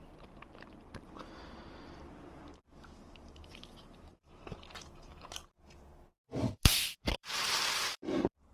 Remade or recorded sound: remade